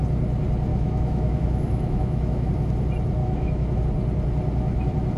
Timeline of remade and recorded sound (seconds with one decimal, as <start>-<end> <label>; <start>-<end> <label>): 0.0-0.7 recorded; 0.7-2.5 remade; 2.5-3.2 recorded; 3.2-3.8 remade; 3.8-5.2 recorded